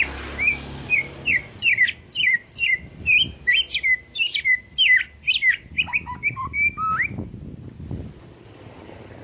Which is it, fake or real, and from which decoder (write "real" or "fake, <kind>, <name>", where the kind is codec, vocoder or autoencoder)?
real